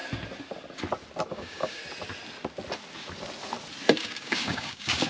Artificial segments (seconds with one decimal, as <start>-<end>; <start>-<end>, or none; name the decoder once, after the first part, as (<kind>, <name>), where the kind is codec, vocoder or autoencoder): 1.3-1.8 (codec, DAC); 4.0-5.1